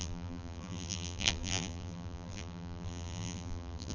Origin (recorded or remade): remade